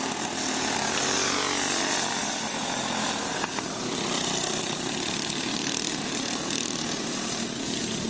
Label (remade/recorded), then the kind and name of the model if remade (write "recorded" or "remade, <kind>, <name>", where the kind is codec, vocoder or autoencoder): recorded